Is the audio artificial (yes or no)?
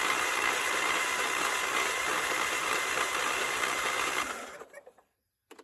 yes